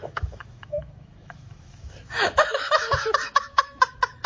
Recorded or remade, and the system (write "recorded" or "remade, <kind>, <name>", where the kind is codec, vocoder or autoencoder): remade, autoencoder, DAC-VAE